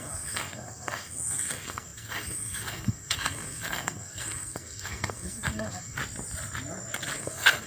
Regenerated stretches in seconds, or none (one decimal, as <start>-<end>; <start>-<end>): 0.0-6.0; 7.2-7.7